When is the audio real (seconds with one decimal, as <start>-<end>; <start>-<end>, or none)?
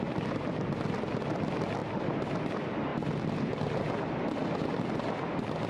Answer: 0.0-2.9; 3.6-5.7